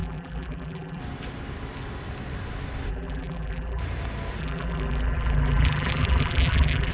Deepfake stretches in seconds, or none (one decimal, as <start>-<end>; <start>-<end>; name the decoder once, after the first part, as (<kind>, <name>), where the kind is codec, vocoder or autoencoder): 0.0-1.0 (vocoder, BigVGAN v2); 2.9-3.8; 4.4-6.9